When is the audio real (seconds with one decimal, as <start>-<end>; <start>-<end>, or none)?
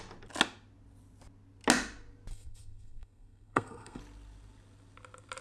0.0-2.3; 4.0-5.4